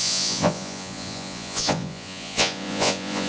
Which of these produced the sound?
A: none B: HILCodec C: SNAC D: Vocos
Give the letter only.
D